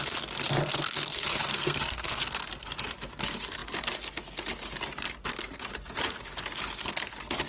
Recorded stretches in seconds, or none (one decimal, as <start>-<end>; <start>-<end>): 0.0-0.5; 2.2-7.5